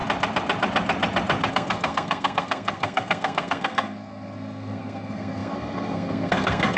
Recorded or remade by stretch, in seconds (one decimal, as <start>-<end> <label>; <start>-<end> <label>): 0.0-1.5 recorded; 1.5-6.8 remade